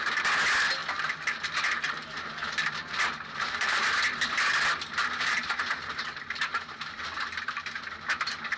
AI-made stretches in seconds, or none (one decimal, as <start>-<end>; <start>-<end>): 0.8-3.9; 5.0-6.4